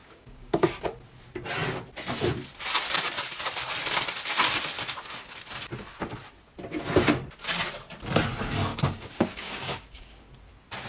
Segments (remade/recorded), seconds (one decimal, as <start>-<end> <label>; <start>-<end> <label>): 0.0-0.8 remade; 0.8-8.7 recorded; 8.7-10.3 remade; 10.3-10.9 recorded